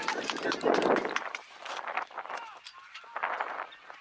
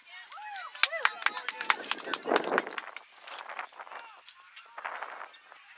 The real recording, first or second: second